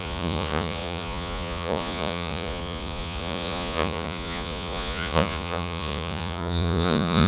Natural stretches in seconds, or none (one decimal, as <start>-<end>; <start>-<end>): none